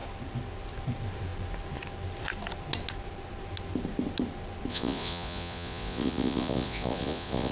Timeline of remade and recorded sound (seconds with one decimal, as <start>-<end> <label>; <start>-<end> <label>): 0.0-4.7 recorded; 4.7-7.5 remade

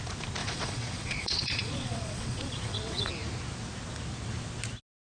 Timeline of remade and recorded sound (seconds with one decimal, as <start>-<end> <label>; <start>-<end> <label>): 0.0-0.4 recorded; 0.4-3.1 remade; 3.1-5.0 recorded